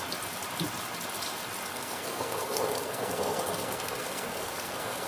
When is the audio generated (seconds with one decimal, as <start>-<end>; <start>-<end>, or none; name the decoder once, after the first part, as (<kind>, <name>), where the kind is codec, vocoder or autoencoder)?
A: 1.7-5.1 (codec, SNAC)